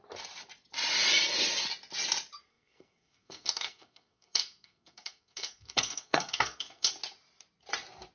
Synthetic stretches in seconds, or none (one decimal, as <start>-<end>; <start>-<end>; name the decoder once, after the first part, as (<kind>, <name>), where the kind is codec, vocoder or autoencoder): 2.5-6.9 (codec, SNAC)